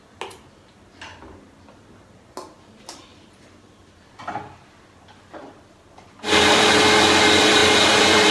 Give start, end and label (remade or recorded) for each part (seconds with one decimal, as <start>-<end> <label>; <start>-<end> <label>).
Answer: 0.0-3.1 recorded; 3.1-6.7 remade; 6.7-7.6 recorded; 7.6-8.3 remade